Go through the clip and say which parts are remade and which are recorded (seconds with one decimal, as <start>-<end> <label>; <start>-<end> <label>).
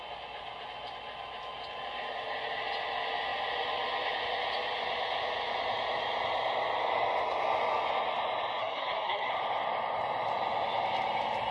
0.0-8.6 recorded; 8.6-9.3 remade; 9.3-11.5 recorded